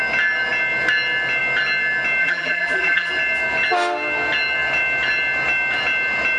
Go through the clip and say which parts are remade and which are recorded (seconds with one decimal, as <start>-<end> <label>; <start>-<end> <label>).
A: 0.0-2.2 recorded; 2.2-3.1 remade; 3.1-6.4 recorded